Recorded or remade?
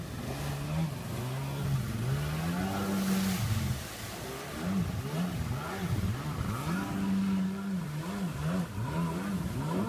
recorded